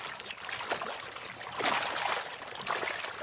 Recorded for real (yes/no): yes